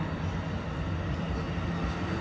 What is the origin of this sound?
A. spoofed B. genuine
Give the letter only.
B